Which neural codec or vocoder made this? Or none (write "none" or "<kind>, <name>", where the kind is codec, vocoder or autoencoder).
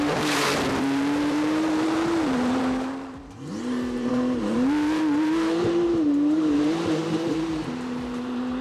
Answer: vocoder, BigVGAN v2